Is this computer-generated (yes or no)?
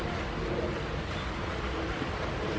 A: no